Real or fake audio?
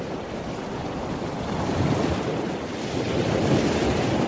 real